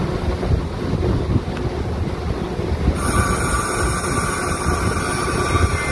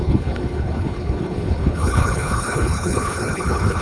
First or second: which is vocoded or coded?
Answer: second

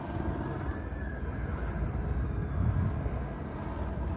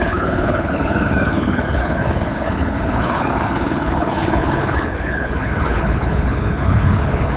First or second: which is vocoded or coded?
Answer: second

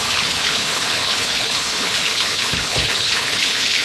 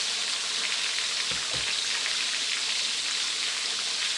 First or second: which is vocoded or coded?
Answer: first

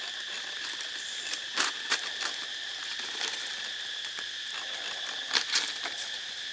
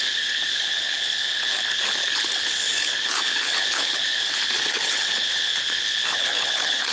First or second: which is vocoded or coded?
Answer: second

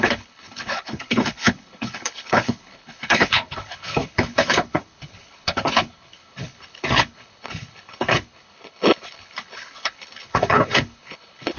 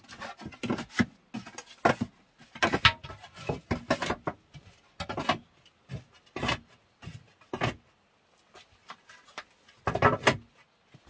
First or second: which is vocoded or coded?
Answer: first